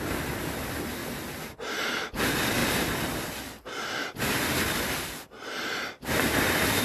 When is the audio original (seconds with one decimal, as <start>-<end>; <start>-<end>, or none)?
1.0-1.7; 2.6-6.8